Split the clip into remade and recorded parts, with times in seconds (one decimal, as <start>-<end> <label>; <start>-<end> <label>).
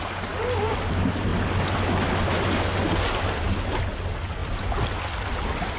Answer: 0.0-5.8 recorded